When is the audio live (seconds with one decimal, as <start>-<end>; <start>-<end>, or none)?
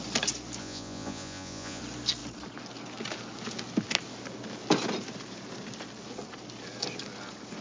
0.0-0.6; 1.8-7.6